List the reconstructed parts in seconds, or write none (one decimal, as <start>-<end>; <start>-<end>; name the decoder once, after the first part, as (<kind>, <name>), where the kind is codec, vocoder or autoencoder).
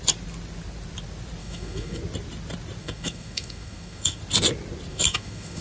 1.4-2.0 (autoencoder, DAC-VAE); 2.8-4.2; 4.9-5.6